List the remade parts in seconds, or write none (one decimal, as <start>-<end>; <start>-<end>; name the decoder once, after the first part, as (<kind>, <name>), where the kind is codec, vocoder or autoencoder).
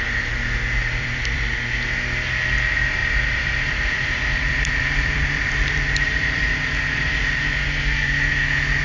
0.8-1.5 (vocoder, BigVGAN v2); 3.0-7.1